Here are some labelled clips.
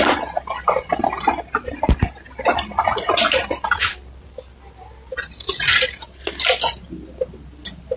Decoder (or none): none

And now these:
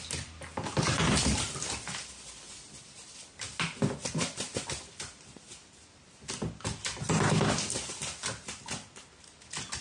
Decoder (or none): none